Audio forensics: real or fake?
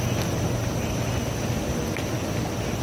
real